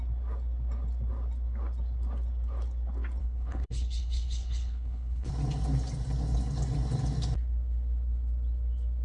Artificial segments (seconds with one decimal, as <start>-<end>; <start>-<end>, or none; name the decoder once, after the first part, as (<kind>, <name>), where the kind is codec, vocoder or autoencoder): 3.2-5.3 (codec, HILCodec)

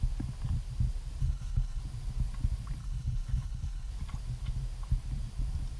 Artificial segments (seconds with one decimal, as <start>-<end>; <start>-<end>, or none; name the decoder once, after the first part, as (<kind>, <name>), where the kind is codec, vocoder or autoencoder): 1.2-1.8 (codec, HILCodec); 2.8-3.9

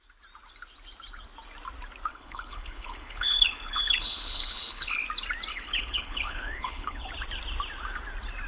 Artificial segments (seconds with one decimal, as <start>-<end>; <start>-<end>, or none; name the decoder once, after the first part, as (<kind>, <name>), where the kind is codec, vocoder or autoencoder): 2.1-5.0 (codec, HILCodec); 5.5-7.1

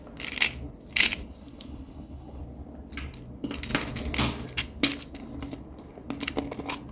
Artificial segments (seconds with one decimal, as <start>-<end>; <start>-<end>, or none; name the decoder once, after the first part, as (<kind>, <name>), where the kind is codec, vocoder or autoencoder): 1.4-2.4 (codec, HILCodec)